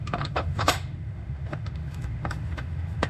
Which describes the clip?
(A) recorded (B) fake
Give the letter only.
B